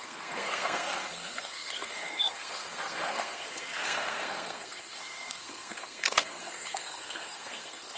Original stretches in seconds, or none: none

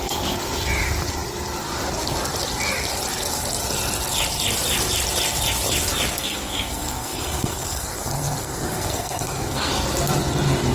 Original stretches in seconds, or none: 0.0-6.2; 9.7-10.7